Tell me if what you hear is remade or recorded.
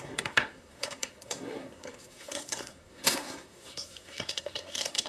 remade